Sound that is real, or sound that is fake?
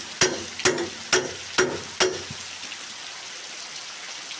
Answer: real